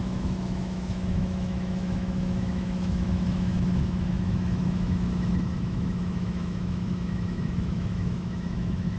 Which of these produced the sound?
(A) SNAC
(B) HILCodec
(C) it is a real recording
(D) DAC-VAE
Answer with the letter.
D